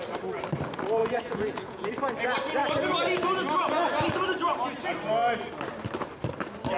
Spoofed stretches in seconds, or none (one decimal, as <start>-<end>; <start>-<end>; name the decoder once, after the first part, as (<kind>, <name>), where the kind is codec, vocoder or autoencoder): 1.0-1.9 (vocoder, Vocos)